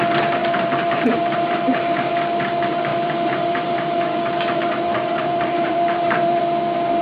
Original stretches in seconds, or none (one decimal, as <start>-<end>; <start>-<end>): 0.0-0.4; 2.1-2.9; 6.4-7.0